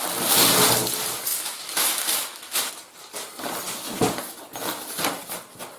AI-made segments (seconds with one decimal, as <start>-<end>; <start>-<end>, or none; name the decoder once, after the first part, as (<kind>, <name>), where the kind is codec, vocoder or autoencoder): 1.3-2.7 (autoencoder, DAC-VAE)